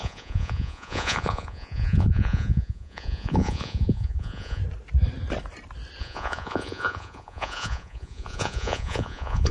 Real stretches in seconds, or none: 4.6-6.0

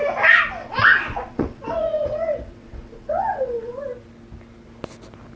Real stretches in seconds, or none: 0.0-0.6; 3.8-5.4